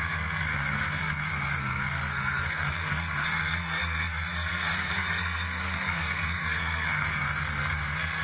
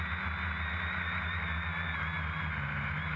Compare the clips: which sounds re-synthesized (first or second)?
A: first